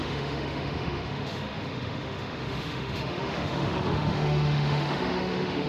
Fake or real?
fake